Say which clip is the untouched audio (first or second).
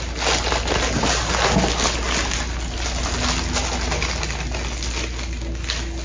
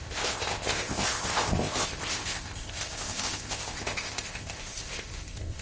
first